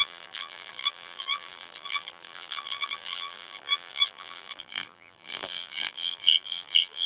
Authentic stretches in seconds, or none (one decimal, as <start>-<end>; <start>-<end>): none